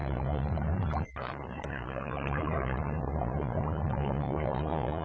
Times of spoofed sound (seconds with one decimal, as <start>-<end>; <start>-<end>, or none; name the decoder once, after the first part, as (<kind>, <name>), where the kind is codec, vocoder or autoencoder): 0.0-5.0 (vocoder, Vocos)